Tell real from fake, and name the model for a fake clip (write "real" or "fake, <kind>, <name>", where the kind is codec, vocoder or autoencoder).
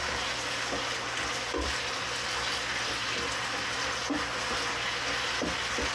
real